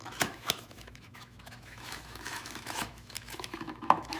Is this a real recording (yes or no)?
no